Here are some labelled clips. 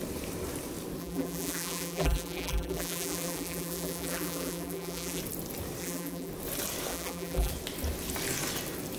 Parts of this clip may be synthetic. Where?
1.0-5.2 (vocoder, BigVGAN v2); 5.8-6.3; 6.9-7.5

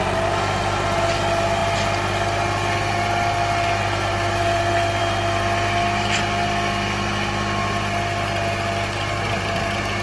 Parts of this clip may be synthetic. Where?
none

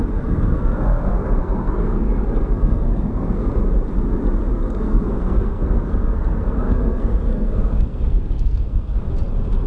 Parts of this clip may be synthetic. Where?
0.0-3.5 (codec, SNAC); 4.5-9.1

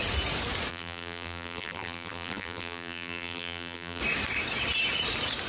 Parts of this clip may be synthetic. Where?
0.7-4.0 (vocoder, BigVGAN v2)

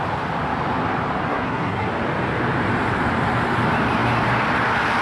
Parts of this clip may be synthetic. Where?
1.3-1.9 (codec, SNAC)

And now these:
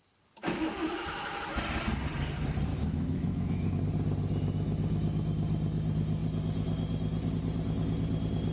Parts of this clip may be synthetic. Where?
0.4-1.4 (autoencoder, DAC-VAE); 2.7-3.8

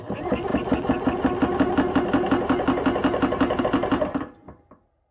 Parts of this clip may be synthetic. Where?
none

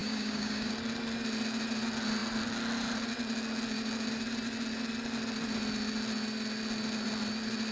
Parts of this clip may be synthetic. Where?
0.0-0.7 (codec, DAC)